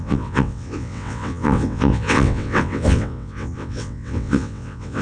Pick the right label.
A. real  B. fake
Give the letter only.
B